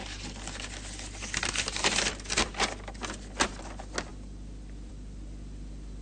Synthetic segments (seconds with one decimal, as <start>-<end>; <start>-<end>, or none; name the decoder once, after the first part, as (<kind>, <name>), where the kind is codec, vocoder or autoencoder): none